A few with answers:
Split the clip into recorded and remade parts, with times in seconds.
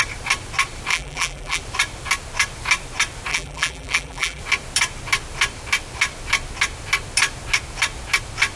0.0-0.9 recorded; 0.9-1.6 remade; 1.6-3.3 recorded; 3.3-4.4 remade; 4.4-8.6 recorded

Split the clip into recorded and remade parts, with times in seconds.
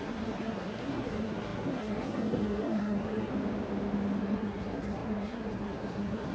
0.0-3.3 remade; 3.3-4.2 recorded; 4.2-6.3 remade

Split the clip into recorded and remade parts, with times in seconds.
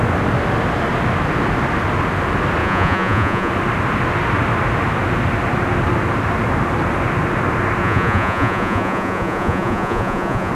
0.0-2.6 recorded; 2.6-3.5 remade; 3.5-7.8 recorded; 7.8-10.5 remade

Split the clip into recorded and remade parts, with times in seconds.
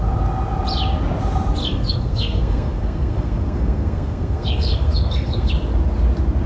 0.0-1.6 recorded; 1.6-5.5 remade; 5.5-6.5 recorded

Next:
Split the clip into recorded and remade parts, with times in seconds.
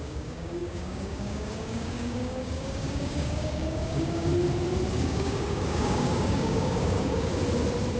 0.0-4.3 remade; 4.3-4.9 recorded; 4.9-7.3 remade; 7.3-8.0 recorded